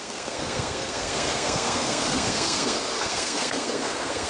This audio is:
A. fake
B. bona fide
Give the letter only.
A